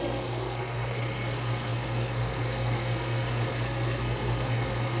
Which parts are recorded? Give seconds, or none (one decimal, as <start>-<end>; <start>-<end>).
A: none